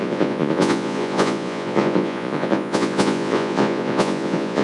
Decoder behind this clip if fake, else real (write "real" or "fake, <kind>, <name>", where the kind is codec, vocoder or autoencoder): fake, vocoder, Vocos